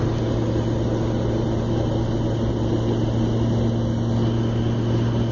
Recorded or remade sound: recorded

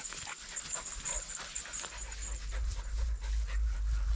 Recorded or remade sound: recorded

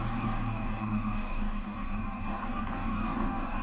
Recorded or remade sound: remade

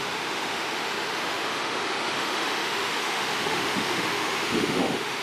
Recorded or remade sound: remade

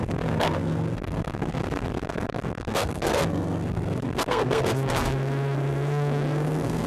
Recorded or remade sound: remade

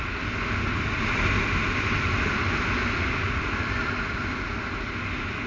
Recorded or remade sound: recorded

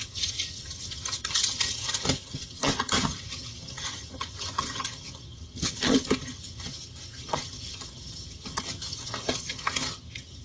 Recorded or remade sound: remade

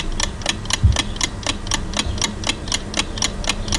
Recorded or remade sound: recorded